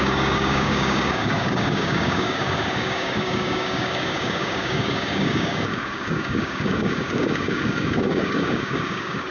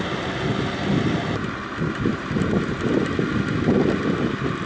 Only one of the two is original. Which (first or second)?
second